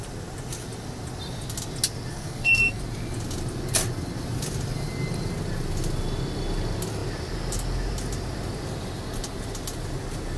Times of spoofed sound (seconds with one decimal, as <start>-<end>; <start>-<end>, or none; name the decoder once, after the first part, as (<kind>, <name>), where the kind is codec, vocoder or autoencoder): 2.1-2.8 (codec, SNAC)